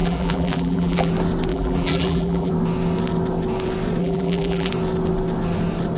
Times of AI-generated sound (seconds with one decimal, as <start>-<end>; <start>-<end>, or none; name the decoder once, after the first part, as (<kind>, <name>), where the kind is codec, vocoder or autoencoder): 0.0-1.1 (vocoder, BigVGAN v2); 1.5-2.5; 4.0-4.7